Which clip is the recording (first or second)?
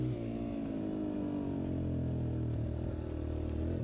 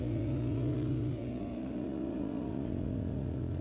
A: first